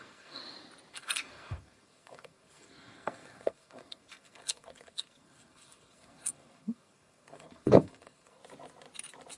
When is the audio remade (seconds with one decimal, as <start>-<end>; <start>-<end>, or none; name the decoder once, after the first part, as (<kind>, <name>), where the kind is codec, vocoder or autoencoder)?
0.0-0.4 (codec, SNAC); 0.9-8.4